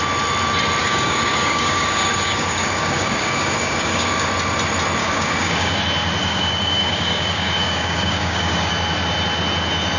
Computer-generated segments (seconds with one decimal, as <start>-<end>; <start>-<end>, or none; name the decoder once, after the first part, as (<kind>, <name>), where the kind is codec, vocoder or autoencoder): 0.8-4.3 (codec, DAC); 5.0-5.8; 6.2-8.7